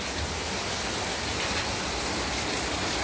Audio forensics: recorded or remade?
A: recorded